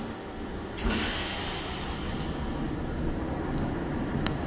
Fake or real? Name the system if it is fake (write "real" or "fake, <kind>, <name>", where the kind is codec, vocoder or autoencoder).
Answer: real